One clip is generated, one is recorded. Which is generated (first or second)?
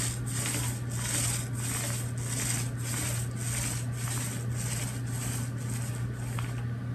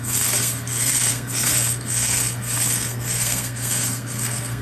second